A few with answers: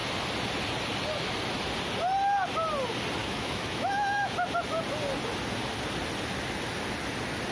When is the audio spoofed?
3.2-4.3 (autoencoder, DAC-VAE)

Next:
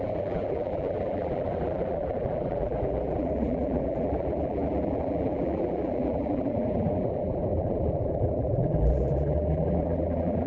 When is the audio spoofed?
0.0-10.5 (vocoder, BigVGAN v2)

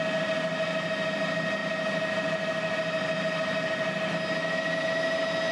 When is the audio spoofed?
none

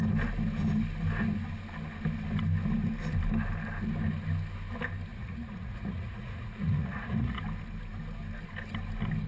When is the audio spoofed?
5.1-7.4 (vocoder, Vocos)

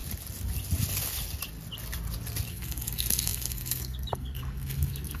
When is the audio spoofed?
2.5-5.2 (codec, SNAC)